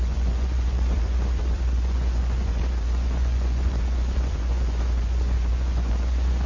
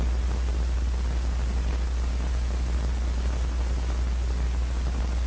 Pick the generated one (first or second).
first